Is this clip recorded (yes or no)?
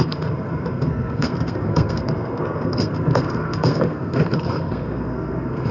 no